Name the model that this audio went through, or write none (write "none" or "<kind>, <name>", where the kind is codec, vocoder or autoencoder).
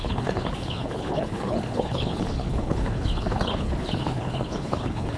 codec, HILCodec